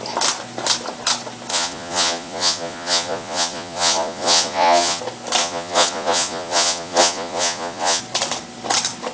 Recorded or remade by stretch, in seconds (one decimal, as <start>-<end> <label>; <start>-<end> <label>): 0.0-1.5 recorded; 1.5-5.0 remade; 5.0-5.4 recorded; 5.4-8.0 remade; 8.0-9.1 recorded